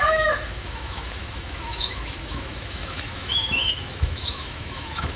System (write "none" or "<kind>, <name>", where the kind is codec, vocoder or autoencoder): autoencoder, DAC-VAE